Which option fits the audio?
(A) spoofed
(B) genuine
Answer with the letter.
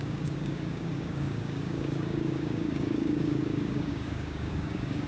A